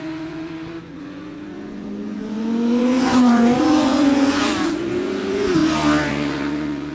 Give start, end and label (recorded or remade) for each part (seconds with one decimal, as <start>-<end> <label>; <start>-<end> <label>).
0.0-5.6 remade; 5.6-6.1 recorded; 6.1-6.9 remade